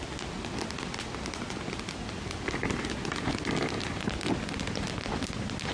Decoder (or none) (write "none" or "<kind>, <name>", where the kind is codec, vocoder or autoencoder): none